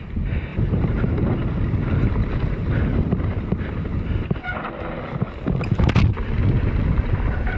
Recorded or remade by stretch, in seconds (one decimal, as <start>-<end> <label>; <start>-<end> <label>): 0.0-7.6 recorded